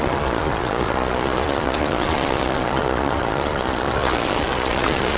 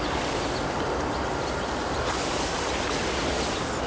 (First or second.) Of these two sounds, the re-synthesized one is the first